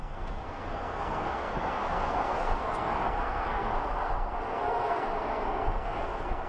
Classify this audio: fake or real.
fake